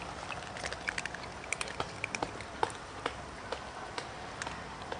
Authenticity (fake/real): real